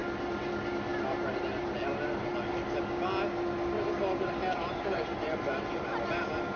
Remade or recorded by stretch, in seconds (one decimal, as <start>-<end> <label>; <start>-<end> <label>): 0.0-6.6 recorded